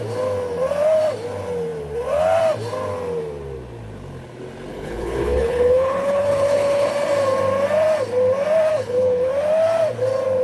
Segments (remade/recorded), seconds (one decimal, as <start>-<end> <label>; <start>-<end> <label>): 0.0-4.7 recorded; 4.7-6.9 remade; 6.9-8.7 recorded; 8.7-9.3 remade; 9.3-10.4 recorded